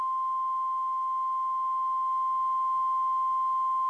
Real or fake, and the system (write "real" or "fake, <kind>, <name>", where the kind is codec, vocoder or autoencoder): real